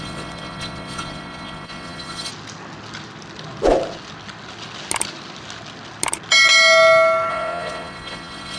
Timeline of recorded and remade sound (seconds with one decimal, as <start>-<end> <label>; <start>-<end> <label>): 0.0-2.3 remade; 2.3-7.3 recorded; 7.3-8.6 remade